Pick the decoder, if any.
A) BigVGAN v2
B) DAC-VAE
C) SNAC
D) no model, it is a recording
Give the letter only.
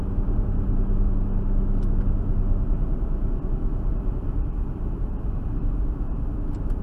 D